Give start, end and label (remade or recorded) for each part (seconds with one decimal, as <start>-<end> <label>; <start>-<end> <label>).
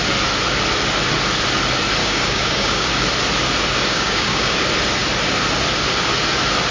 0.0-2.0 recorded; 2.0-2.9 remade; 2.9-3.9 recorded; 3.9-4.6 remade; 4.6-6.7 recorded